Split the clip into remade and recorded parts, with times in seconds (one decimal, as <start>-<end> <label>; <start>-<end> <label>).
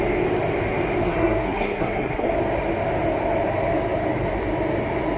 0.0-1.0 recorded; 1.0-2.3 remade; 2.3-5.2 recorded